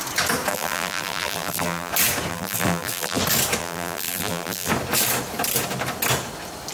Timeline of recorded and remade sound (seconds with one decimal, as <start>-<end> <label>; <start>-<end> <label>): 0.0-0.5 recorded; 0.5-1.9 remade; 1.9-2.3 recorded; 2.3-3.2 remade; 3.2-3.6 recorded; 3.6-4.7 remade; 4.7-6.7 recorded